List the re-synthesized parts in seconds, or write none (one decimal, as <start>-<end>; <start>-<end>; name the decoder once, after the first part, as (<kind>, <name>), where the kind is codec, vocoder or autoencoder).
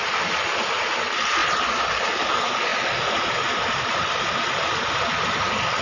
none